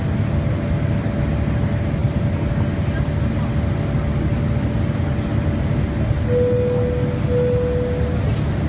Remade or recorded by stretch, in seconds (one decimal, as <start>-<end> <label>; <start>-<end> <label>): 0.0-8.7 recorded